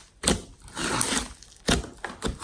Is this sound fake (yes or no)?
no